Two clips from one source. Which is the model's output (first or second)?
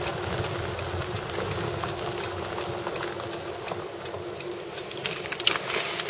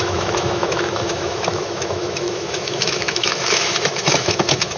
second